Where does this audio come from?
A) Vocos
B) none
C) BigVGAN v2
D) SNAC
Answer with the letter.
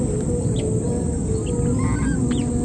B